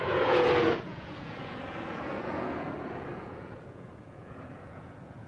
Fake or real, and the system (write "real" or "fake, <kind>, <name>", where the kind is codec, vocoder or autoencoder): fake, vocoder, Vocos